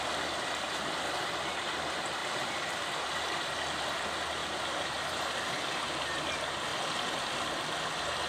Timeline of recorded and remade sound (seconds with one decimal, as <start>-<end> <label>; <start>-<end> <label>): 0.0-2.2 recorded; 2.2-3.1 remade; 3.1-4.4 recorded; 4.4-6.2 remade; 6.2-8.3 recorded